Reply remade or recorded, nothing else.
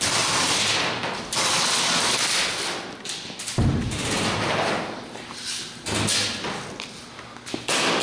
recorded